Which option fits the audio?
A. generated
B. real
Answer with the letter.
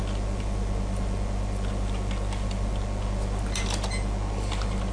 B